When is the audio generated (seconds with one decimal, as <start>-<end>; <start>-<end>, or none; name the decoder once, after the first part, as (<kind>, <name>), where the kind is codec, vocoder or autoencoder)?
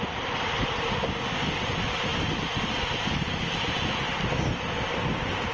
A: none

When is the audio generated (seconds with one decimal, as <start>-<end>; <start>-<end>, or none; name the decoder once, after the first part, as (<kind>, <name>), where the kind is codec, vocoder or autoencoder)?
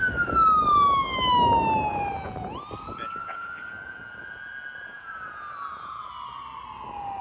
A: 1.9-2.6 (vocoder, Vocos); 3.2-6.1